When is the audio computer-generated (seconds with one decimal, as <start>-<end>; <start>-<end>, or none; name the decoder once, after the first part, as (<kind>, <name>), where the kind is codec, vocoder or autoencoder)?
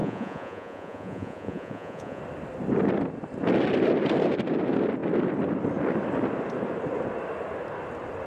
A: 0.0-2.2 (vocoder, Vocos)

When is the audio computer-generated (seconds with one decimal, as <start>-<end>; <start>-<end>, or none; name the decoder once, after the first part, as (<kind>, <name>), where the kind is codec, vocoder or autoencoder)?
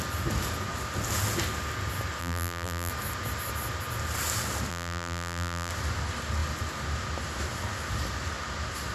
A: 2.2-2.9 (vocoder, BigVGAN v2); 4.7-5.7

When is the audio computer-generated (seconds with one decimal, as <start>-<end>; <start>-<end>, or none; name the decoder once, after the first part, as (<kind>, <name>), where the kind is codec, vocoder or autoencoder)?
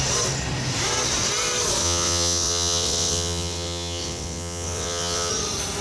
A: 1.8-5.3 (vocoder, WaveNeXt)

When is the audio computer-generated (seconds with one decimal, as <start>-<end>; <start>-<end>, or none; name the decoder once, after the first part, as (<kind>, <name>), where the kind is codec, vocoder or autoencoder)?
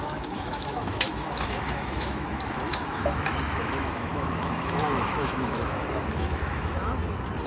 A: 0.0-7.0 (autoencoder, DAC-VAE)